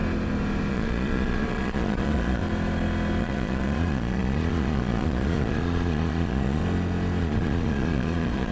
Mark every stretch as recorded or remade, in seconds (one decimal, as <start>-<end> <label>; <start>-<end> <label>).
0.0-0.7 recorded; 0.7-2.4 remade; 2.4-3.2 recorded; 3.2-6.6 remade; 6.6-7.2 recorded; 7.2-8.5 remade

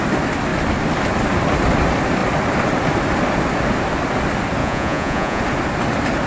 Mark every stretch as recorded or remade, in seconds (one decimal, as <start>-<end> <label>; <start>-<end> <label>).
0.0-4.6 recorded; 4.6-5.4 remade; 5.4-6.3 recorded